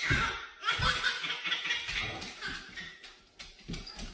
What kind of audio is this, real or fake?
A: real